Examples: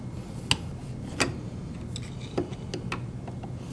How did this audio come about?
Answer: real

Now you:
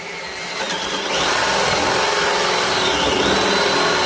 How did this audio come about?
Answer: real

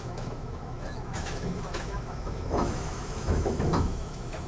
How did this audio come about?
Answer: fake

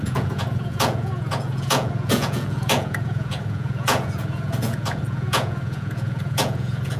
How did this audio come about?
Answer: fake